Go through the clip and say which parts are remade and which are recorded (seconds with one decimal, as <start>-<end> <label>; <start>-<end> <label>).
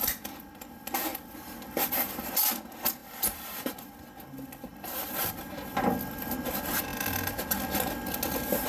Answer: 0.0-1.1 recorded; 1.1-2.4 remade; 2.4-4.7 recorded; 4.7-5.4 remade; 5.4-6.9 recorded; 6.9-7.4 remade; 7.4-8.7 recorded